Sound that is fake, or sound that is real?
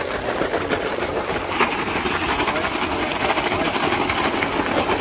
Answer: real